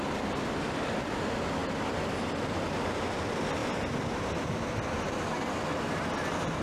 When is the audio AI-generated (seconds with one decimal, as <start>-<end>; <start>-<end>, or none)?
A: none

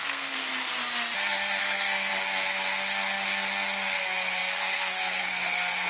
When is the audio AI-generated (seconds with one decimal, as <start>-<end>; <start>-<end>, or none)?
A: 0.0-0.4; 1.6-2.1; 4.0-5.9

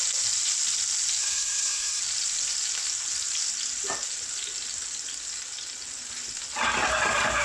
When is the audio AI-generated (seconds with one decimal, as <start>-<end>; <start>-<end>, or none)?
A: 1.2-2.0

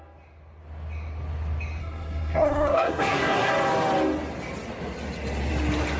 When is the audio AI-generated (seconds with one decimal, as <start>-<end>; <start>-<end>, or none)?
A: 1.8-3.5